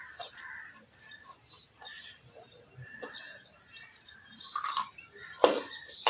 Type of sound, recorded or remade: recorded